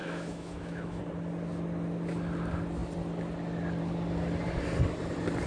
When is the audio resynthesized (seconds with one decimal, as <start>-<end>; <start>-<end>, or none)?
0.0-1.0